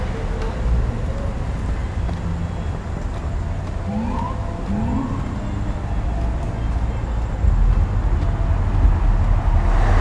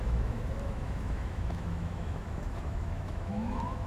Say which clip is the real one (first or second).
first